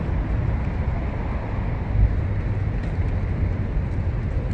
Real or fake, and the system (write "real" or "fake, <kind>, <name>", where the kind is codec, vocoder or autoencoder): fake, vocoder, BigVGAN v2